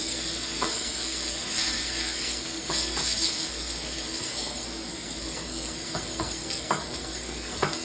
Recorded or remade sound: remade